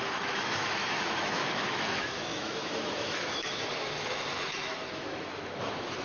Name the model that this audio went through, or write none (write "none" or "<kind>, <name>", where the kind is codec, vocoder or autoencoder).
autoencoder, DAC-VAE